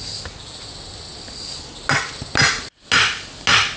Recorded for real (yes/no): yes